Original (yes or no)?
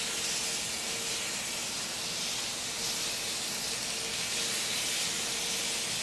yes